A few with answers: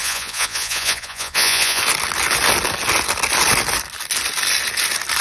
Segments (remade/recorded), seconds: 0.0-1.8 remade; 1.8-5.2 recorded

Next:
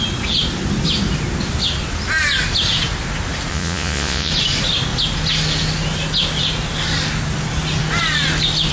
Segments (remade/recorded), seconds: 0.0-3.5 recorded; 3.5-4.3 remade; 4.3-8.7 recorded

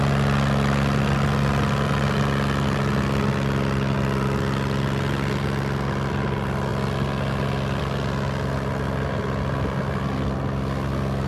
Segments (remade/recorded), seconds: 0.0-11.3 recorded

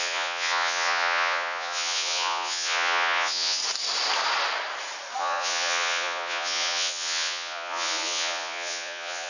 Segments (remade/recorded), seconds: 0.0-3.6 remade; 3.6-5.2 recorded; 5.2-9.3 remade